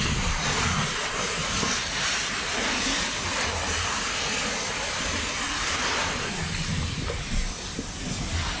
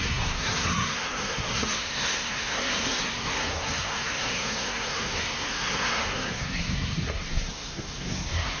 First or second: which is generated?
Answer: second